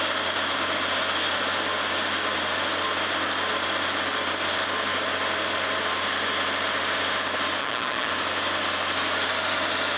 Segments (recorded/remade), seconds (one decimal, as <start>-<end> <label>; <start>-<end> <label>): 0.0-7.6 recorded; 7.6-8.1 remade; 8.1-10.0 recorded